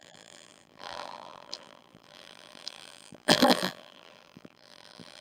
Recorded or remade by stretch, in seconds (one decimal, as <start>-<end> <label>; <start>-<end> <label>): 0.0-5.2 remade